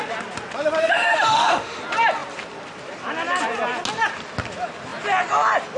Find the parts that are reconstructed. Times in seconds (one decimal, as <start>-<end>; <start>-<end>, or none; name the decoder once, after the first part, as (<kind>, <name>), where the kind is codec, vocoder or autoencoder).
0.8-1.8 (autoencoder, DAC-VAE)